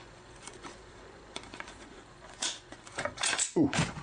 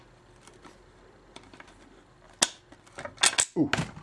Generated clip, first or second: first